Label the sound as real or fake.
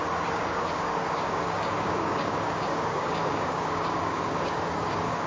fake